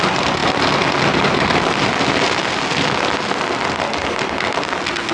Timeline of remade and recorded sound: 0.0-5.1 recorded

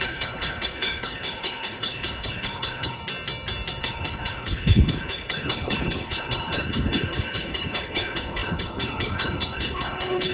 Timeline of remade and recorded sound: 0.0-3.0 remade; 3.0-3.8 recorded; 3.8-10.3 remade

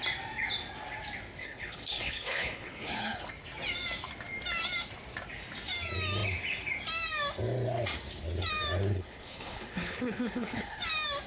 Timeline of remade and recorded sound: 0.0-1.4 recorded; 1.4-3.3 remade; 3.3-8.9 recorded; 8.9-10.8 remade; 10.8-11.3 recorded

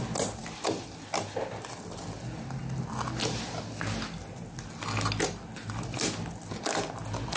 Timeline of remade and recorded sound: 0.0-7.4 recorded

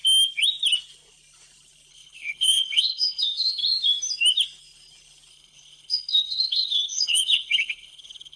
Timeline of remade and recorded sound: 0.0-1.9 recorded; 1.9-3.6 remade; 3.6-5.3 recorded; 5.3-8.4 remade

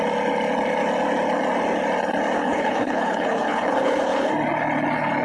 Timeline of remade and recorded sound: 0.0-2.4 recorded; 2.4-4.3 remade; 4.3-5.2 recorded

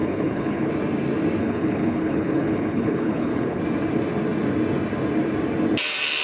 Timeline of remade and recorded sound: 0.0-0.7 remade; 0.7-1.4 recorded; 1.4-3.6 remade; 3.6-6.2 recorded